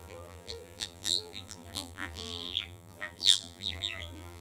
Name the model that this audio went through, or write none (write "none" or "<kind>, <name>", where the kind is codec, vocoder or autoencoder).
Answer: vocoder, BigVGAN v2